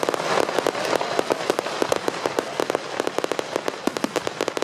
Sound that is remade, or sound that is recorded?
recorded